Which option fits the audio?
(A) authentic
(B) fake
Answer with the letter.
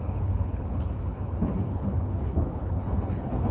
B